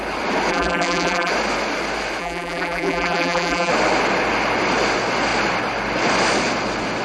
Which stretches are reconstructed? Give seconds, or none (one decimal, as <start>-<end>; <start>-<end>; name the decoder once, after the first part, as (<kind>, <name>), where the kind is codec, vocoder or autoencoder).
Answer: 0.5-1.3 (vocoder, BigVGAN v2); 2.2-3.7